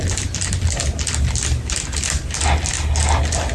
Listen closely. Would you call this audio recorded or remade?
recorded